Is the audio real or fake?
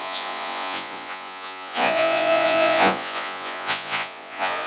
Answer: fake